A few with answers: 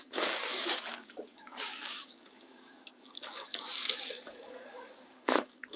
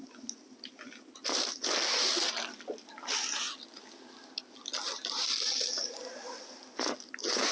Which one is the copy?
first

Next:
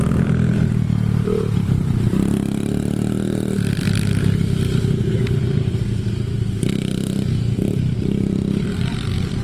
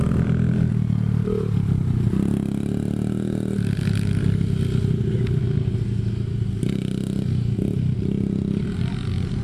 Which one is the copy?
first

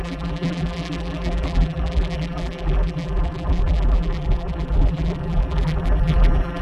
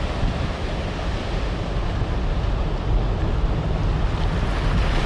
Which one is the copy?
first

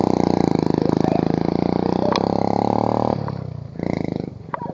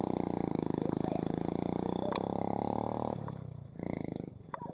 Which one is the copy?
second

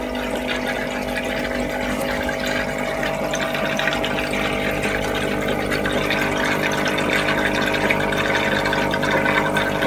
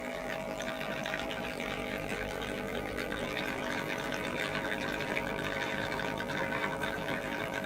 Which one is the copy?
second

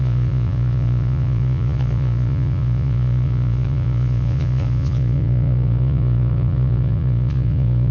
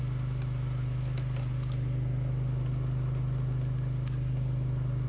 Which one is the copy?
first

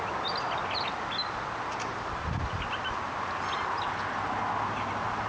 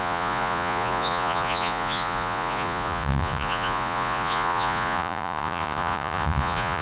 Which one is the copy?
second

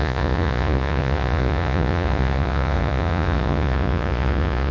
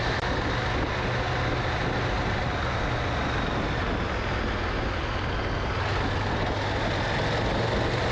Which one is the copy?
first